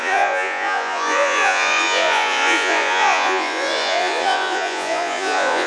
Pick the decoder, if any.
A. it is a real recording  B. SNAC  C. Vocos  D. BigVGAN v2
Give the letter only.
C